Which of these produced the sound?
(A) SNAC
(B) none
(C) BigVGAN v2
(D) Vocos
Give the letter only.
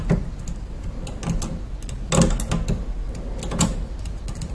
B